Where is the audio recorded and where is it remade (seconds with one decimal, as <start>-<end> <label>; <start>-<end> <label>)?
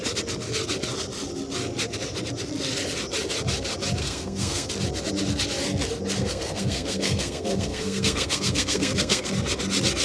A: 0.0-4.0 recorded; 4.0-4.7 remade; 4.7-6.2 recorded; 6.2-9.3 remade; 9.3-10.0 recorded